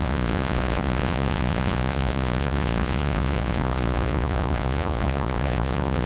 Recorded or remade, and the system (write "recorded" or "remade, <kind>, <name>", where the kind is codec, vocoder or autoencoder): remade, vocoder, Vocos